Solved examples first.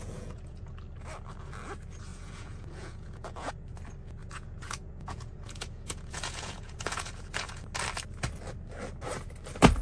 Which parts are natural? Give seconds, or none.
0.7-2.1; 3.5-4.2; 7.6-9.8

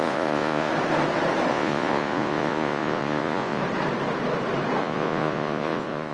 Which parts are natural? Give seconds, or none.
0.7-1.5; 3.6-4.8

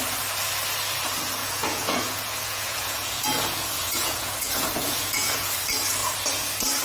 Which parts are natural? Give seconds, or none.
0.0-1.4; 5.5-6.8

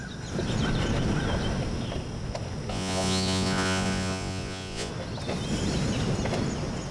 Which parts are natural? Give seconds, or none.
0.0-2.7; 4.9-6.9

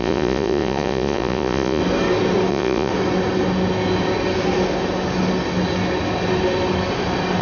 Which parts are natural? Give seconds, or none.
1.8-2.5; 2.9-7.4

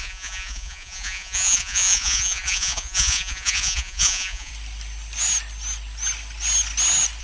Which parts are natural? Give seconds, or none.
4.5-7.2